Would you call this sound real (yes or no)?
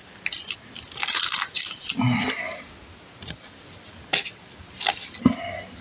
yes